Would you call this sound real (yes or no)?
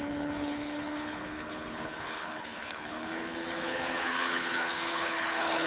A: no